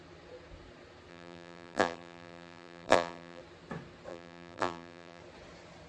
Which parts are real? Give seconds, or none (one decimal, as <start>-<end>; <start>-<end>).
0.0-1.1; 3.4-4.1; 5.2-5.9